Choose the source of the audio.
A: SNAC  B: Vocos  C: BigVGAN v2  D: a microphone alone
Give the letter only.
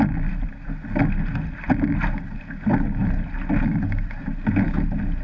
D